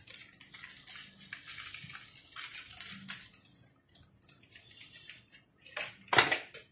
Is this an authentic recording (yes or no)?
yes